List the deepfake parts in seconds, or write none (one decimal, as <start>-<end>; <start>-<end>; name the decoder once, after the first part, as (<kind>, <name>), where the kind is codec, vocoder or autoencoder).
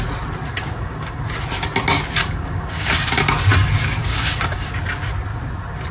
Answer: 0.5-1.2 (codec, DAC); 2.2-3.2; 4.0-4.7